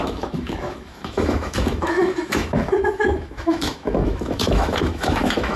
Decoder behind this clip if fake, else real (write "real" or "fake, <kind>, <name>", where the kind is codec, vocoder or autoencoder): fake, autoencoder, DAC-VAE